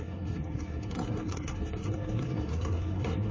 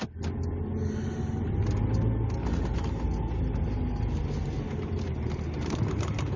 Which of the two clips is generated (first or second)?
first